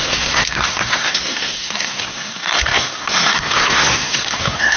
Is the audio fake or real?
fake